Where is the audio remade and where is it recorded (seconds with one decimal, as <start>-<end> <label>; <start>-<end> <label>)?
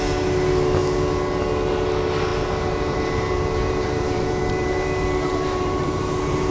0.0-2.3 recorded; 2.3-6.5 remade